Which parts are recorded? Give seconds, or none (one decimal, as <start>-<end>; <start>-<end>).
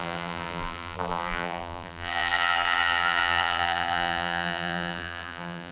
none